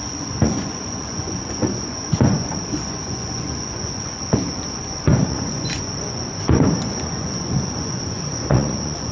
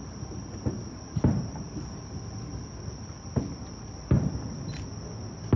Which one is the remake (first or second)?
first